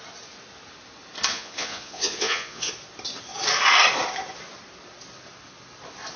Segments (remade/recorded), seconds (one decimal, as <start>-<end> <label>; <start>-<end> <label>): 0.0-1.3 recorded; 1.3-2.7 remade; 2.7-6.2 recorded